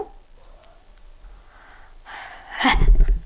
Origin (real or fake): real